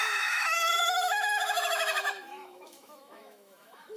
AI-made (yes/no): yes